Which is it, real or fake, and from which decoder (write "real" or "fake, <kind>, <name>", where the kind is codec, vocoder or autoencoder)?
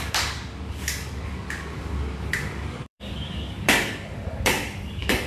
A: fake, codec, DAC